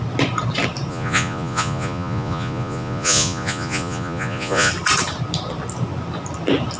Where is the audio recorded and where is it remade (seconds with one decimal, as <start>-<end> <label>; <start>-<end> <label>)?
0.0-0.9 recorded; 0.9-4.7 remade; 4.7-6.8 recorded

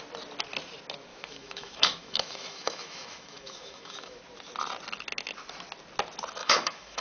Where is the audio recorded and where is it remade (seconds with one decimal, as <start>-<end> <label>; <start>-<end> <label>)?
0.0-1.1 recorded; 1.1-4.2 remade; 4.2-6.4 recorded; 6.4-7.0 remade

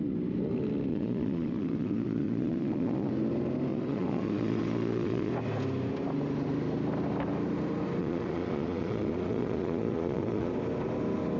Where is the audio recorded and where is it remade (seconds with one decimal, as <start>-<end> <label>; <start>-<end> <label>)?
0.0-0.9 recorded; 0.9-3.1 remade; 3.1-3.7 recorded; 3.7-5.3 remade; 5.3-8.0 recorded; 8.0-10.5 remade; 10.5-11.4 recorded

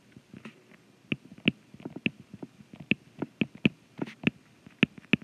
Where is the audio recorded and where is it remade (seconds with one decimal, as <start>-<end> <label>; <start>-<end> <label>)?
0.0-5.2 recorded

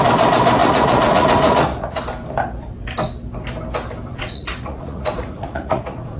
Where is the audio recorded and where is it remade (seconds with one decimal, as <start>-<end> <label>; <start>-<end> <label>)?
0.0-0.6 recorded; 0.6-2.0 remade; 2.0-4.1 recorded; 4.1-6.2 remade